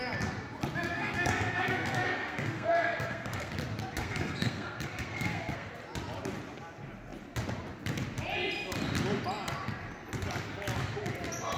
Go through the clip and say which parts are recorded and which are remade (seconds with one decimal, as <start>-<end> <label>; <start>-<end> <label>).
0.0-0.9 recorded; 0.9-3.5 remade; 3.5-4.0 recorded; 4.0-5.7 remade; 5.7-11.6 recorded